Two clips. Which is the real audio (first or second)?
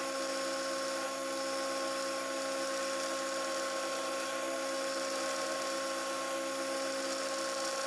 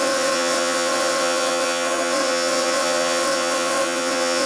first